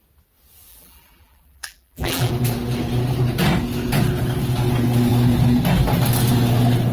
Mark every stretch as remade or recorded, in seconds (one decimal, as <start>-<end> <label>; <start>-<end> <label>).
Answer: 0.0-0.7 recorded; 0.7-2.3 remade; 2.3-6.9 recorded